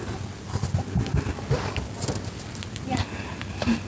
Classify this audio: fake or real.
real